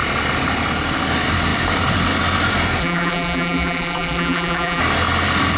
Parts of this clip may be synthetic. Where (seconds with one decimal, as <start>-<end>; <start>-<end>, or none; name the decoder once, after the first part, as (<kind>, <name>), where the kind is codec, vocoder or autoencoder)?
2.8-4.8 (vocoder, BigVGAN v2)